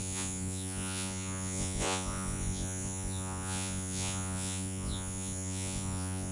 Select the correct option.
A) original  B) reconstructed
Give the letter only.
B